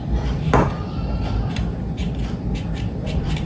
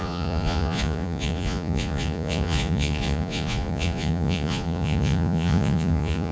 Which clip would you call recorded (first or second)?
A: first